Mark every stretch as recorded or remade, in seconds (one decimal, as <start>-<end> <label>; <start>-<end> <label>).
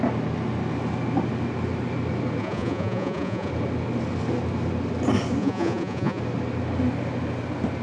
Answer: 0.0-2.4 recorded; 2.4-3.5 remade; 3.5-5.4 recorded; 5.4-6.2 remade; 6.2-7.8 recorded